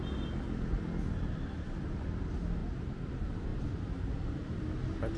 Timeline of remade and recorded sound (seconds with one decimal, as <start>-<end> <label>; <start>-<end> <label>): 0.0-5.2 recorded